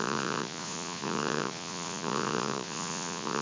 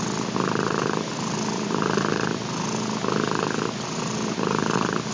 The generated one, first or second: first